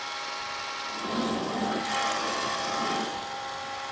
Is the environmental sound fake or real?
real